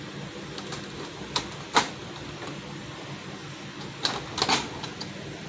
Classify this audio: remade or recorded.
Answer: recorded